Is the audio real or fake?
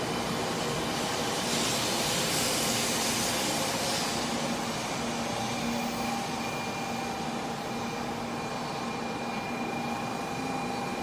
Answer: real